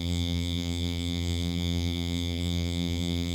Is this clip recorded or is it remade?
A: remade